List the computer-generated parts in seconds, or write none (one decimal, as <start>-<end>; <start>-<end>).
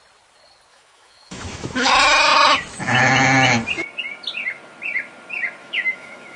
0.7-1.9; 5.6-6.4